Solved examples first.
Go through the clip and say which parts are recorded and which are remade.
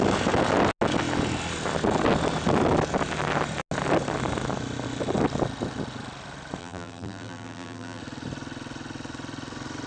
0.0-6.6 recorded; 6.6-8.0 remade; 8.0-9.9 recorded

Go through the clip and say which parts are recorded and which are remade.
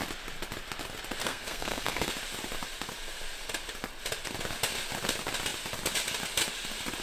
0.0-1.2 recorded; 1.2-2.1 remade; 2.1-7.0 recorded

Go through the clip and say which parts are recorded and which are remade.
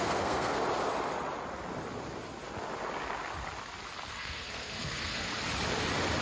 0.0-0.6 remade; 0.6-4.1 recorded; 4.1-5.3 remade; 5.3-6.2 recorded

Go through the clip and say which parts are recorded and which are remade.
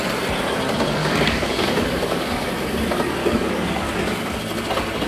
0.0-1.0 recorded; 1.0-2.5 remade; 2.5-3.2 recorded; 3.2-4.4 remade; 4.4-5.1 recorded